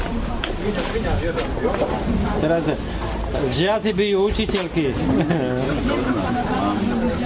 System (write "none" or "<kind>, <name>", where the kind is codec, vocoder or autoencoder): none